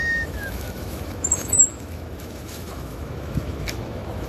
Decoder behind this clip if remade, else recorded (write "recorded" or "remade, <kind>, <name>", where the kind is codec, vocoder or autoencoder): remade, autoencoder, DAC-VAE